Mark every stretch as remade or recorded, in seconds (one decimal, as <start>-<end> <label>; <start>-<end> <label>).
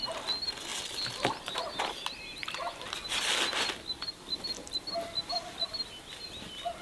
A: 0.0-6.8 recorded